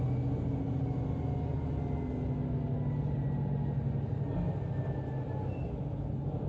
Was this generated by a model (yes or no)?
no